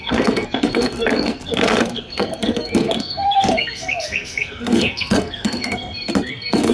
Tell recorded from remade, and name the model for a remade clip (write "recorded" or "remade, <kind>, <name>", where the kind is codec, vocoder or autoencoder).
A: remade, codec, SNAC